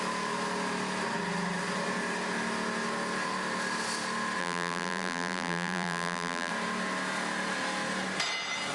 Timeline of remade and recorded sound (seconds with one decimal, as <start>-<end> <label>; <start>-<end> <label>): 0.0-4.4 recorded; 4.4-6.5 remade; 6.5-8.7 recorded